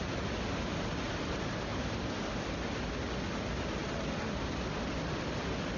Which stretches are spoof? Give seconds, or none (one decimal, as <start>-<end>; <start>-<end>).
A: 1.7-2.3